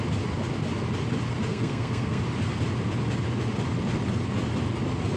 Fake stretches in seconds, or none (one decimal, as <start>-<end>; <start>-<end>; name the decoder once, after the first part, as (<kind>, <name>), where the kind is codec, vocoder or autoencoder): 1.5-2.2 (codec, SNAC)